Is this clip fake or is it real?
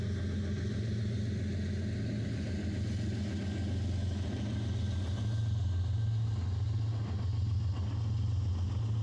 real